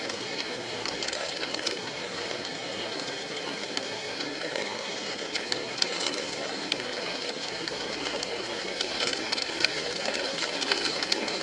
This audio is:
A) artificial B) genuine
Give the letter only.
A